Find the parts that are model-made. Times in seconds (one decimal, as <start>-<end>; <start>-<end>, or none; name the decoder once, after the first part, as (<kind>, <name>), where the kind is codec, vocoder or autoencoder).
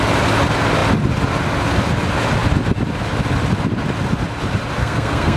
4.8-5.4 (codec, SNAC)